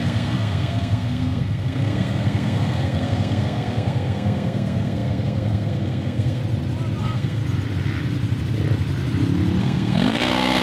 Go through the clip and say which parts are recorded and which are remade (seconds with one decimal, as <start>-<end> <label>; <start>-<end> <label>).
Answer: 0.0-6.4 remade; 6.4-7.0 recorded; 7.0-7.4 remade; 7.4-9.6 recorded; 9.6-10.6 remade